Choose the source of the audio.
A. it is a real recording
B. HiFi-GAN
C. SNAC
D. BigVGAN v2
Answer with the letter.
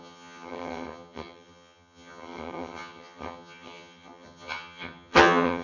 B